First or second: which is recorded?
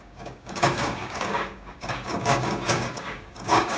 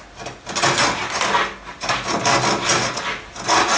second